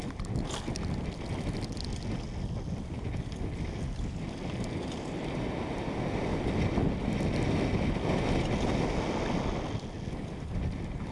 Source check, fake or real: real